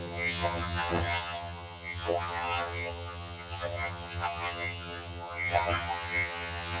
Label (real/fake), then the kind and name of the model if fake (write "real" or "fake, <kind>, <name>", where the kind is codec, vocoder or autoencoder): fake, vocoder, HiFi-GAN